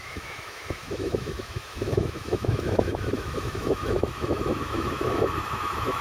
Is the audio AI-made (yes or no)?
yes